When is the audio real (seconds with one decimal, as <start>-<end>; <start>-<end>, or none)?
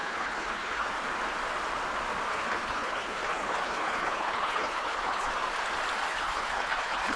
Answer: 0.9-2.3; 5.3-6.1